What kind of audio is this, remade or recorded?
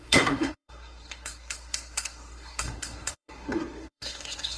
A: remade